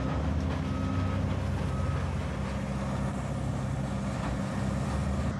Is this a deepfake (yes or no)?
no